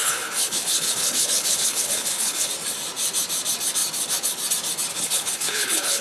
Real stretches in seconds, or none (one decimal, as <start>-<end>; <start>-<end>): 2.5-4.9